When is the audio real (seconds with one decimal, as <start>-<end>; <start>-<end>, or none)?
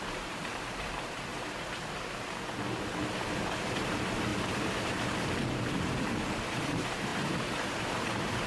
1.3-3.7